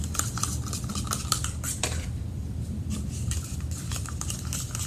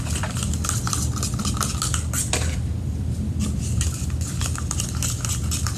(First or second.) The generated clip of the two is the first